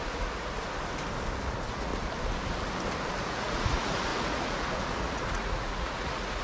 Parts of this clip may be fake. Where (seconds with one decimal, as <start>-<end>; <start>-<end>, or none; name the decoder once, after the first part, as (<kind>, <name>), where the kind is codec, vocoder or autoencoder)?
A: 0.0-0.6 (vocoder, Vocos); 1.4-1.9; 3.1-6.4